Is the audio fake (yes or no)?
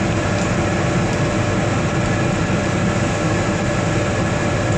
no